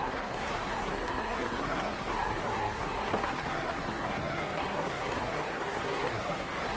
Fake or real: fake